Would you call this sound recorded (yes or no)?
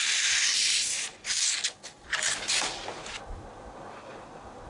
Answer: yes